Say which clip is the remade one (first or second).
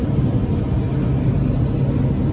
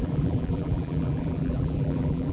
second